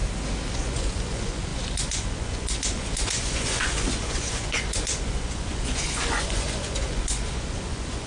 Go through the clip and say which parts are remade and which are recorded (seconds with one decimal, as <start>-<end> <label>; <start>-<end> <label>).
0.0-0.5 recorded; 0.5-8.1 remade